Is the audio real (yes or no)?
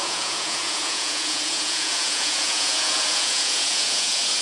no